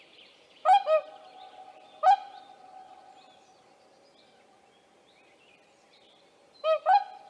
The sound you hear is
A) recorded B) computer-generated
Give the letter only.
A